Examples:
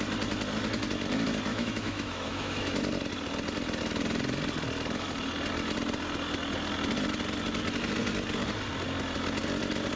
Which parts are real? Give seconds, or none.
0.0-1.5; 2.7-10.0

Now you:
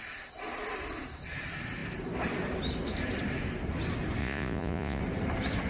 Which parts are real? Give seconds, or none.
0.0-4.2; 5.0-5.7

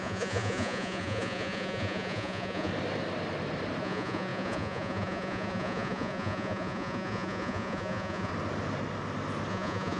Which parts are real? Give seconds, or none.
2.7-3.8; 8.3-9.5